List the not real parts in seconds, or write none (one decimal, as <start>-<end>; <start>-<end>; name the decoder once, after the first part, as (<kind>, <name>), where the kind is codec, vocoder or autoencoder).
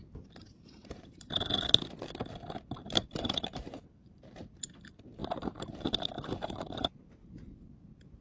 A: 0.8-1.4 (vocoder, BigVGAN v2); 2.8-4.4; 5.2-7.5